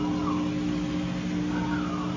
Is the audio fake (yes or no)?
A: no